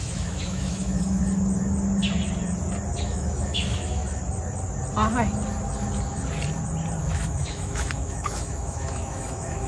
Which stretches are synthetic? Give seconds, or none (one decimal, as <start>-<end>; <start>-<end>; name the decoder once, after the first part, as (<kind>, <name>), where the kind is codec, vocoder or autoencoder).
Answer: 0.0-1.2 (autoencoder, DAC-VAE); 3.0-4.0; 7.0-9.7

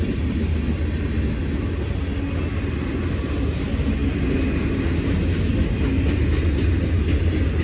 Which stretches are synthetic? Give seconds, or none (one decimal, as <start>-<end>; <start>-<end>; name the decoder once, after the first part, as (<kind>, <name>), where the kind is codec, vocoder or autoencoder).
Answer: none